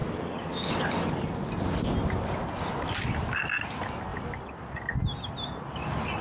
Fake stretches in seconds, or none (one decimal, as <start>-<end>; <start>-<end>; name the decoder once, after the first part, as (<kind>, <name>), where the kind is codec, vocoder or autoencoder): none